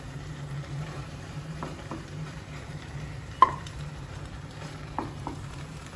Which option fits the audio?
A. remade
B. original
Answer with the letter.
A